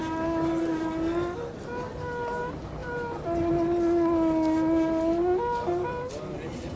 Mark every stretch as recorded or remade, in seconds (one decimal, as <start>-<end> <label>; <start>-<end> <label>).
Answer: 0.0-6.8 recorded